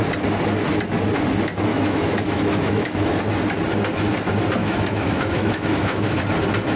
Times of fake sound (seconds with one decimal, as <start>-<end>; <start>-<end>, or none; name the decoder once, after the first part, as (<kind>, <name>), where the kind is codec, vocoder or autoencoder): 1.7-3.2 (autoencoder, DAC-VAE); 4.6-6.2